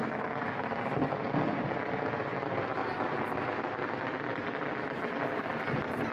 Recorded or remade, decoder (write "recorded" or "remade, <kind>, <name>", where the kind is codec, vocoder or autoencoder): recorded